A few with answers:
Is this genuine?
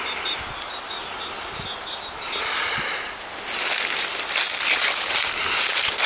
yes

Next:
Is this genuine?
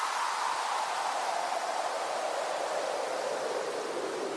yes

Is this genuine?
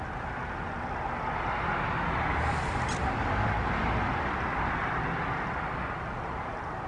yes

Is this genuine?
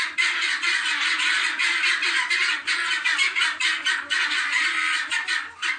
yes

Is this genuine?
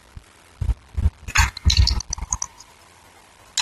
yes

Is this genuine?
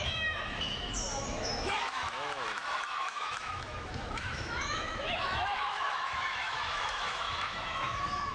no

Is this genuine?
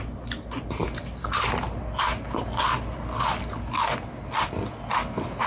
yes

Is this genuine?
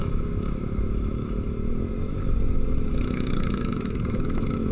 no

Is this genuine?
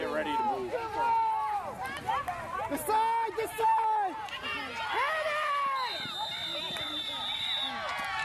yes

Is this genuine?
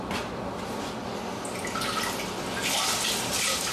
yes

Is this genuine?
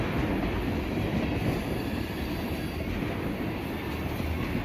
yes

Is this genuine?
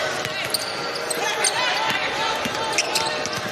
yes